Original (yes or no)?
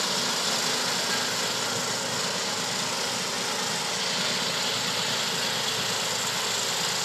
yes